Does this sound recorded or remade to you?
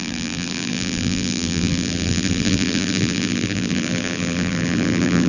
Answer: remade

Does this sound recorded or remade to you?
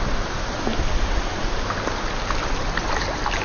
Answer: recorded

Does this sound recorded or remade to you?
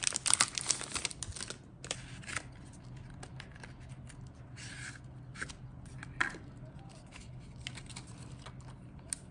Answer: recorded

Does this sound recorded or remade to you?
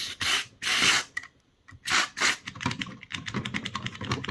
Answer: recorded